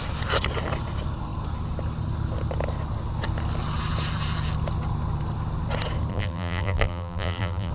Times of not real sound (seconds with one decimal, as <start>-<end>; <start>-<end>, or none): 6.1-7.7